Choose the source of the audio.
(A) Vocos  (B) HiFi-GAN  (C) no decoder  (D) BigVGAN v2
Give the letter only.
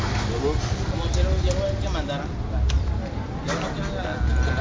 C